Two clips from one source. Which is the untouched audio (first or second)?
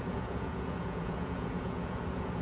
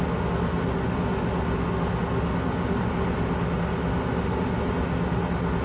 second